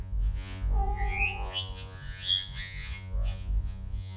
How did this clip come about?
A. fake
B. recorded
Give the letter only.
A